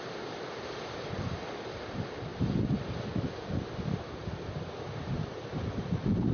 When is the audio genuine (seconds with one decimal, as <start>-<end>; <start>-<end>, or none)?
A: none